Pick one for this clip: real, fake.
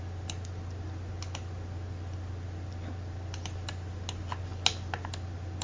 real